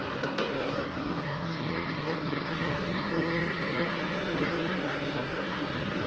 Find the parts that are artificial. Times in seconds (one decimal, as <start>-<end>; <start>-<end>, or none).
0.0-6.1